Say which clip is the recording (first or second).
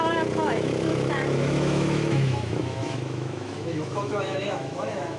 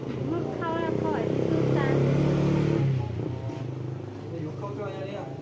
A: second